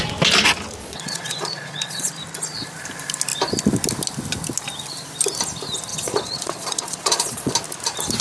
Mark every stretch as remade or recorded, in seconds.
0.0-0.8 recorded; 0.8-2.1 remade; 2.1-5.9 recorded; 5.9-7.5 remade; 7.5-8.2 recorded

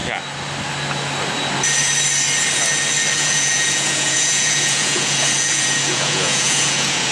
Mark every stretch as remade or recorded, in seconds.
0.0-3.1 recorded; 3.1-7.1 remade

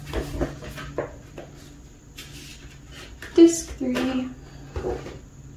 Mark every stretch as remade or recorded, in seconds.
0.0-5.6 recorded